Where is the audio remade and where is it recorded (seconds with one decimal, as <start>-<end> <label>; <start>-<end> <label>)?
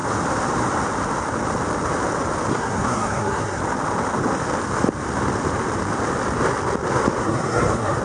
0.0-2.5 recorded; 2.5-3.6 remade; 3.6-7.2 recorded; 7.2-8.0 remade